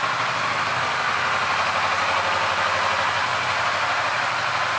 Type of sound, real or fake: real